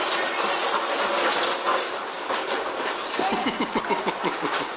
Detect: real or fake real